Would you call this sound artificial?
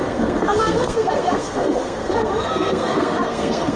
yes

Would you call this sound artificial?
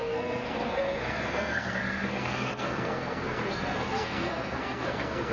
yes